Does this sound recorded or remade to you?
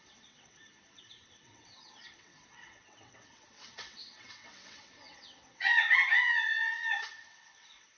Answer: remade